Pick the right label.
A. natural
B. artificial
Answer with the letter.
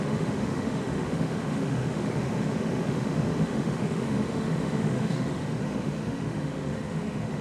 B